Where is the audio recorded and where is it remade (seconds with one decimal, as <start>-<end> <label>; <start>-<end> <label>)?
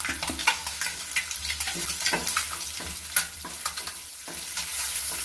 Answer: 0.0-0.4 recorded; 0.4-1.0 remade; 1.0-5.2 recorded